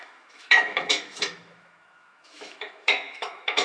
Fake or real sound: fake